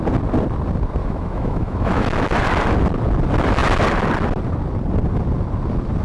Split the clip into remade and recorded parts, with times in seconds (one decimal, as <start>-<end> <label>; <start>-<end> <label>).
0.0-1.0 recorded; 1.0-2.3 remade; 2.3-6.0 recorded